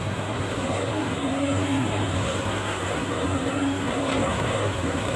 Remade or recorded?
remade